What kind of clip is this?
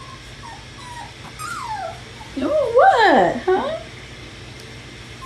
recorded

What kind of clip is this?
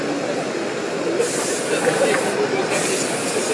recorded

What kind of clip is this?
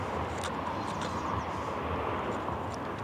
recorded